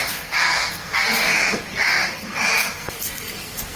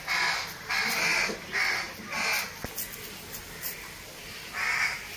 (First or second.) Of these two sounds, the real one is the second